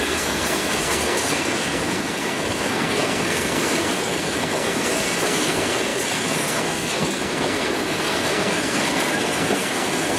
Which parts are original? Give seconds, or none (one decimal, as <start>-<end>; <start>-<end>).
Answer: none